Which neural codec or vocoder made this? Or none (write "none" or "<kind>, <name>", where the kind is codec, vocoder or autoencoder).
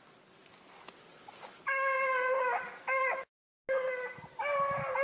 none